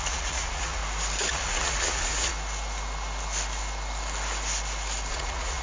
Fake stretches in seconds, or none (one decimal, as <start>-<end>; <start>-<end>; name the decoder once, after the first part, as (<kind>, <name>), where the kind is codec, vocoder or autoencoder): 0.0-0.8 (vocoder, Vocos); 1.3-2.3; 5.1-5.6